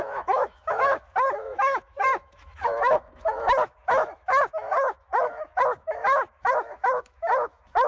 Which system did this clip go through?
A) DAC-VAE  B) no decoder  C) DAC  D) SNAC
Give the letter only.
A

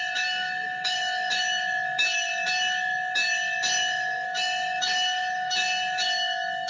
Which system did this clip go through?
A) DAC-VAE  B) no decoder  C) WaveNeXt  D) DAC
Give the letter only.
A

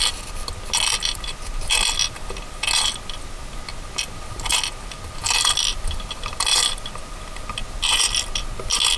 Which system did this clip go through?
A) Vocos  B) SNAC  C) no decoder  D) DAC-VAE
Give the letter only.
C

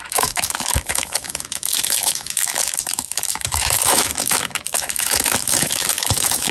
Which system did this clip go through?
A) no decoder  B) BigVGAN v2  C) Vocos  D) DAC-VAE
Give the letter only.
D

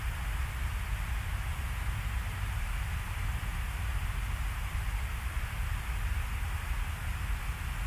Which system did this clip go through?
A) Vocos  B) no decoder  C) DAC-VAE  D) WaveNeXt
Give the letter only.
B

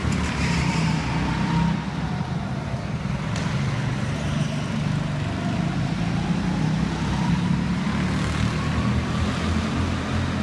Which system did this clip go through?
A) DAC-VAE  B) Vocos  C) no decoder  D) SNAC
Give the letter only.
C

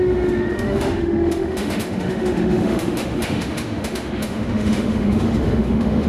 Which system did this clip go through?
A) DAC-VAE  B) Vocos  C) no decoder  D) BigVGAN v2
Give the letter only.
A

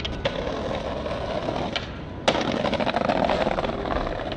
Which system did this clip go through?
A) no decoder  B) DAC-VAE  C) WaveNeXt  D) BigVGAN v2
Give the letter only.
A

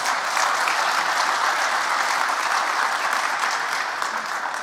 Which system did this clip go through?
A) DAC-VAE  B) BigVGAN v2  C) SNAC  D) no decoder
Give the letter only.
D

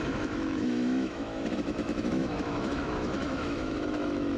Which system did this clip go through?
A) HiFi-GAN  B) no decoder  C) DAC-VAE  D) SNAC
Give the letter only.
C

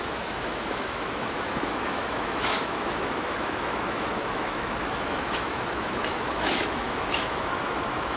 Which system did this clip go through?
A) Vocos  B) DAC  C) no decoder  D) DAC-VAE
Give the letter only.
D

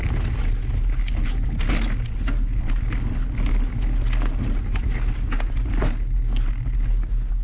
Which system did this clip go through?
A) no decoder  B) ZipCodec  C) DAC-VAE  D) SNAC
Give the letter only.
A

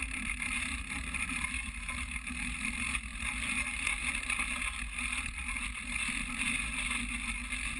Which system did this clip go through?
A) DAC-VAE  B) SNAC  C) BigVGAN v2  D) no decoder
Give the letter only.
D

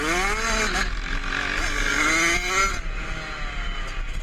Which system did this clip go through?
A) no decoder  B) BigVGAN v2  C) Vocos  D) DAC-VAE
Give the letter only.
A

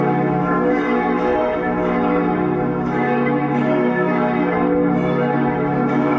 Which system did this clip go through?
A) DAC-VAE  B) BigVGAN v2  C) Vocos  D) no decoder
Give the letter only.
A